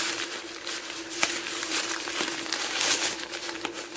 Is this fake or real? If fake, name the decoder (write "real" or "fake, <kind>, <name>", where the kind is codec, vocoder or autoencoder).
real